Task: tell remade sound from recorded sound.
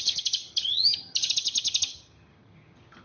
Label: remade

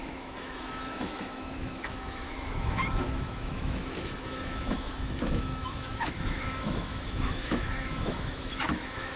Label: remade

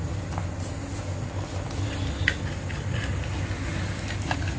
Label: recorded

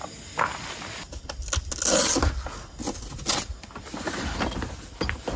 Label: recorded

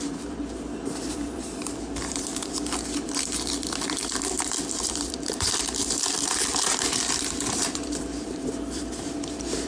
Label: remade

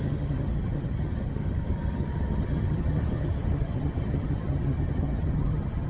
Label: remade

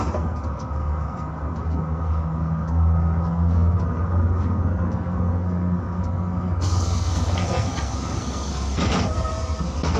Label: remade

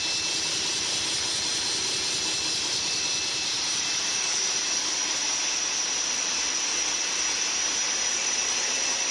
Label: recorded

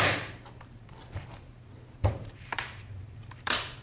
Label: remade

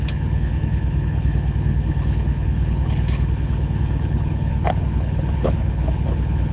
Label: remade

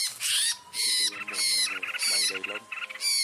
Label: recorded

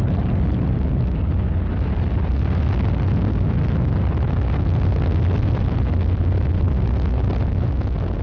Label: recorded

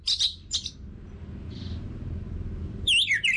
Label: recorded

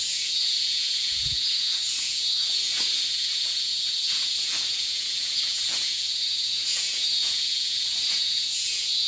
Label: remade